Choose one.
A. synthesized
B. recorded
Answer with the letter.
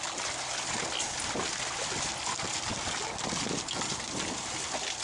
B